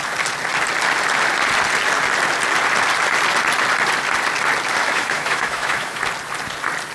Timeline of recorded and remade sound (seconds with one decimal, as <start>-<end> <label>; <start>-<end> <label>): 0.0-4.8 recorded; 4.8-6.0 remade; 6.0-6.9 recorded